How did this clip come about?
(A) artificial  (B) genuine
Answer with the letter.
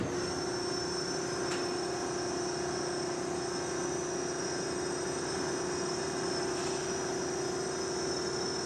B